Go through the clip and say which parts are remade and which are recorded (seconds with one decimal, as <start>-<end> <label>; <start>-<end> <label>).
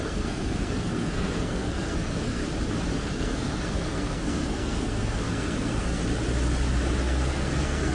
0.0-2.4 remade; 2.4-3.1 recorded; 3.1-6.0 remade; 6.0-7.0 recorded; 7.0-7.9 remade